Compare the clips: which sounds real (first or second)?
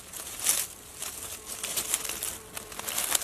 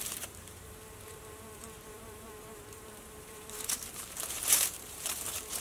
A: first